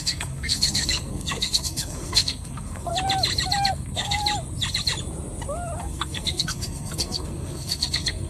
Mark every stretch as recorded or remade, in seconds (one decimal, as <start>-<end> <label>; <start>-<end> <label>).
0.0-2.9 remade; 2.9-3.7 recorded; 3.7-4.2 remade; 4.2-5.8 recorded; 5.8-8.3 remade